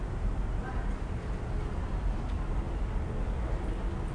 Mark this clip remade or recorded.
recorded